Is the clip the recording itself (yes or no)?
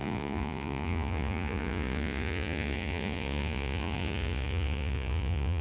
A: no